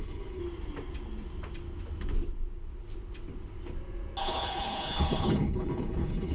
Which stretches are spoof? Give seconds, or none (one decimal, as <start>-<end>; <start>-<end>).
0.0-0.4; 4.2-6.3